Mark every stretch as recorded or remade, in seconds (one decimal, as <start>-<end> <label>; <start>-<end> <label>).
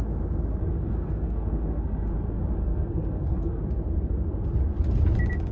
0.0-0.6 recorded; 0.6-2.1 remade; 2.1-2.6 recorded; 2.6-3.6 remade; 3.6-5.5 recorded